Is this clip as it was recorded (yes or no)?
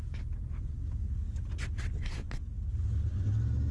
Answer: yes